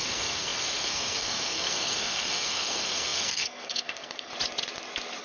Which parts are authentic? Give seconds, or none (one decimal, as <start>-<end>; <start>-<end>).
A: 4.3-5.2